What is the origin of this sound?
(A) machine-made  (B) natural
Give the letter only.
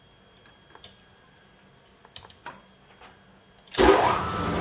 B